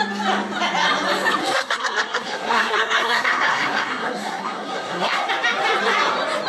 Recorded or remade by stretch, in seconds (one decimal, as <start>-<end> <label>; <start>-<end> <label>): 0.0-1.4 recorded; 1.4-5.3 remade; 5.3-6.5 recorded